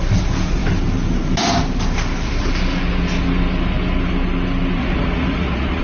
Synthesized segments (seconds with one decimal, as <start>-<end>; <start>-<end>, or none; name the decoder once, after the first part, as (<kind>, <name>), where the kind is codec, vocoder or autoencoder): 4.8-5.8 (vocoder, Vocos)